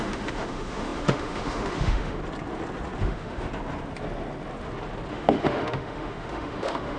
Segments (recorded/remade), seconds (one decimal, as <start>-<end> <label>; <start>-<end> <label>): 0.0-2.2 remade; 2.2-3.0 recorded; 3.0-3.5 remade; 3.5-5.1 recorded; 5.1-7.0 remade